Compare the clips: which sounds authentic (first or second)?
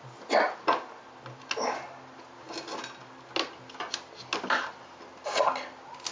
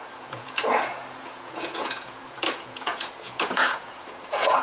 first